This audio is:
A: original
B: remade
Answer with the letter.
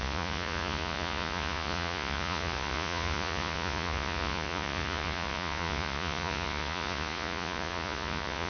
B